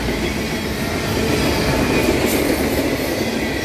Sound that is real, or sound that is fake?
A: real